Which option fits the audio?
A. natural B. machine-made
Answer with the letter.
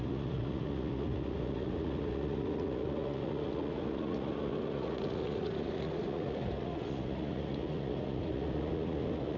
B